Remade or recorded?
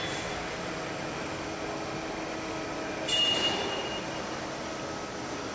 recorded